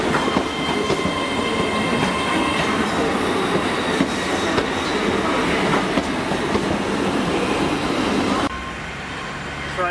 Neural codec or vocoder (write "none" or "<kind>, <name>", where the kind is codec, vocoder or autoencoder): none